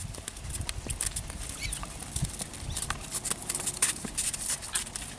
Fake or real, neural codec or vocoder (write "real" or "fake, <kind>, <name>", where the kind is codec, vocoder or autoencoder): real